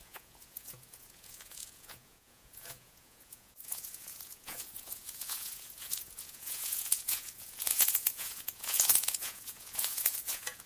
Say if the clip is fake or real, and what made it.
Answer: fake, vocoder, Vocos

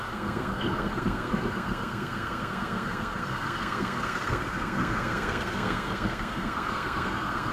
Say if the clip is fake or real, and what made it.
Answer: fake, codec, SNAC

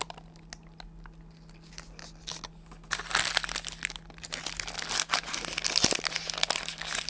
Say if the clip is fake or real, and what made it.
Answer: real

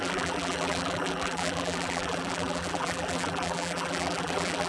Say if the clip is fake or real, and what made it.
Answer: fake, vocoder, BigVGAN v2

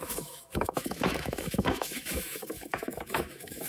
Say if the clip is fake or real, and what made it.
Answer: fake, autoencoder, DAC-VAE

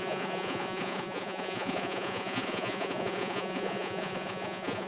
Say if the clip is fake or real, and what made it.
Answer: fake, vocoder, Vocos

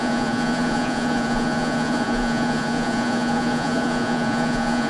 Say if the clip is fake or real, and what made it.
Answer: fake, vocoder, Vocos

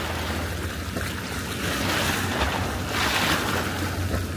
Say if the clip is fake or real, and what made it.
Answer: real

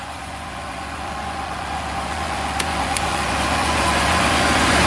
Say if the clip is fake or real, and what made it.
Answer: fake, vocoder, Vocos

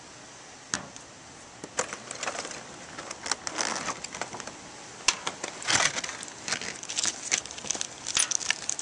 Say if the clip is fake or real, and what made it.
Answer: real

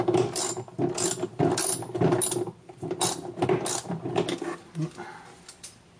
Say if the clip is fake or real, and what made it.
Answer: real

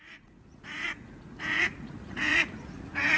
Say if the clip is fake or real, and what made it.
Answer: fake, vocoder, Vocos